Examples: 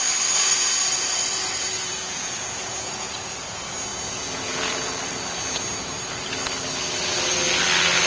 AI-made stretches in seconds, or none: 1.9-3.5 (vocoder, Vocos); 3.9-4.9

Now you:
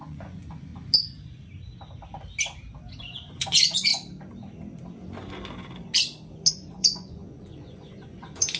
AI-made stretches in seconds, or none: 0.0-0.7 (vocoder, Vocos); 3.0-3.9; 6.5-8.6

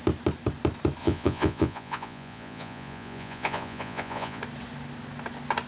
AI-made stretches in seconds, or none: 1.0-4.4 (vocoder, Vocos)

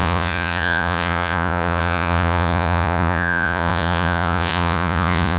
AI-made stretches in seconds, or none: 0.0-5.4 (vocoder, Vocos)

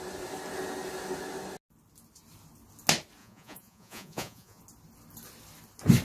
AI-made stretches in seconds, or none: 3.2-4.6 (vocoder, Vocos)